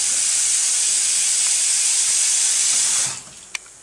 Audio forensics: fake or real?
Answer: real